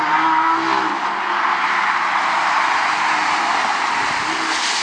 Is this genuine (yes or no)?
yes